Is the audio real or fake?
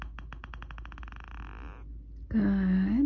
real